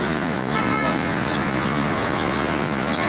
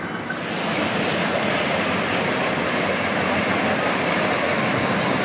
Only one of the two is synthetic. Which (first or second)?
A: first